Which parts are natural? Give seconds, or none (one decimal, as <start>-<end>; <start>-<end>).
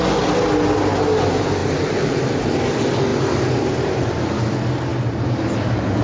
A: 0.0-1.6; 2.4-3.1; 4.4-6.0